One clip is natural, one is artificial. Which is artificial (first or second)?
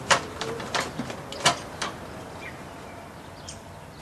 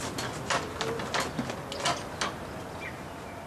first